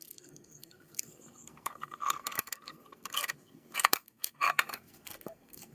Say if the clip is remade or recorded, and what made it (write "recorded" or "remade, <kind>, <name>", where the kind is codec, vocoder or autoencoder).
remade, codec, SNAC